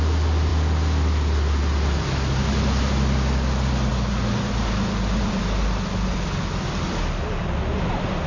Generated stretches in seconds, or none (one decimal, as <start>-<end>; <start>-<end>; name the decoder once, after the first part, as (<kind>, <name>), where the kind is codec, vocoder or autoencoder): none